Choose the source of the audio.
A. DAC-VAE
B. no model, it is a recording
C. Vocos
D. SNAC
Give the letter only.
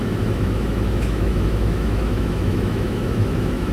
A